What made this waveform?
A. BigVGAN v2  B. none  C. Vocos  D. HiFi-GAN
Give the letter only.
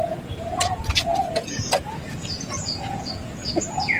C